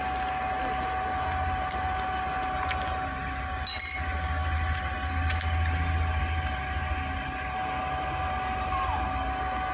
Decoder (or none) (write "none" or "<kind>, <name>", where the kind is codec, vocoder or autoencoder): none